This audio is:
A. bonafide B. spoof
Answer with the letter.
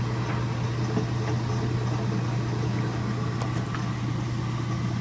A